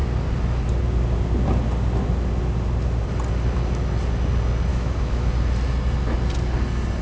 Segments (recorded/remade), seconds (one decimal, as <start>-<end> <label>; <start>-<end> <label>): 0.0-4.7 recorded; 4.7-5.3 remade; 5.3-7.0 recorded